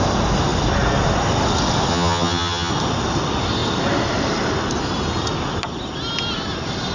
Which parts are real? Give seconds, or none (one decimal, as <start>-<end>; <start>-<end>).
0.0-1.9; 2.7-6.9